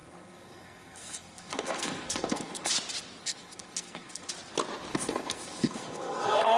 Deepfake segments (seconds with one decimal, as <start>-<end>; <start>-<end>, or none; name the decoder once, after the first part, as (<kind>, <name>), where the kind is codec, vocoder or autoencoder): 0.0-2.7 (codec, SNAC); 3.2-4.3; 4.9-6.6